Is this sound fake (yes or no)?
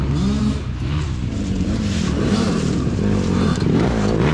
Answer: yes